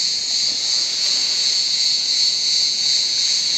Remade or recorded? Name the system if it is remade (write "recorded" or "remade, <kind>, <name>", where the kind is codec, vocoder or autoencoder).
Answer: remade, vocoder, Vocos